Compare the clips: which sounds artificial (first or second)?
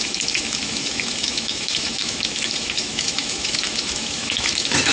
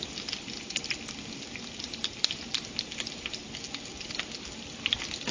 first